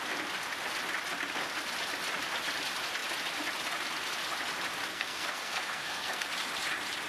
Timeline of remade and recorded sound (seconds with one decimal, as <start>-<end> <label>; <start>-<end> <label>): 0.0-4.9 recorded; 4.9-6.3 remade; 6.3-7.1 recorded